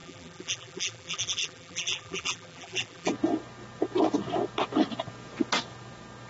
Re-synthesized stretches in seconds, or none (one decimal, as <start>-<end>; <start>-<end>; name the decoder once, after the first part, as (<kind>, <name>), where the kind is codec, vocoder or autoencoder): 0.0-3.1 (vocoder, BigVGAN v2)